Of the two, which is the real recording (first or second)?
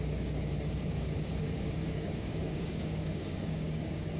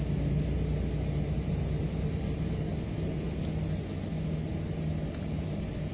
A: second